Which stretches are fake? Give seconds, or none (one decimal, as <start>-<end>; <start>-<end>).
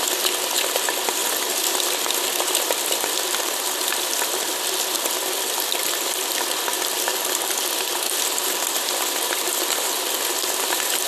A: 0.0-1.2; 2.7-11.1